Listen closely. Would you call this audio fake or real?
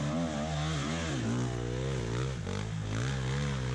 real